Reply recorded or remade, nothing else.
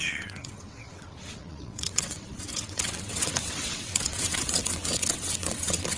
remade